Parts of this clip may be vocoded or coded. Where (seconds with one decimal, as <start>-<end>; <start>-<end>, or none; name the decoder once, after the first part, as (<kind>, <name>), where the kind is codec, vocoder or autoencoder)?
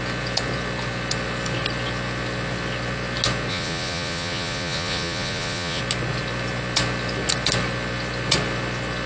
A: 3.5-5.8 (vocoder, Vocos)